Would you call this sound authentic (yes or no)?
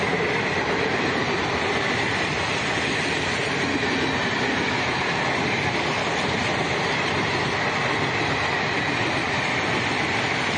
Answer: yes